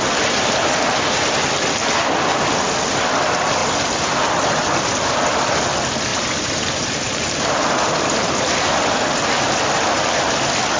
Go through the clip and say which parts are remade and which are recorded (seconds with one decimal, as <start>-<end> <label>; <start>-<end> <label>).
0.0-3.6 recorded; 3.6-4.2 remade; 4.2-6.1 recorded; 6.1-7.5 remade; 7.5-10.8 recorded